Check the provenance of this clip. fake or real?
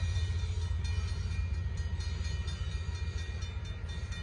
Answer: real